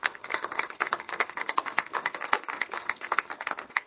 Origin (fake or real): fake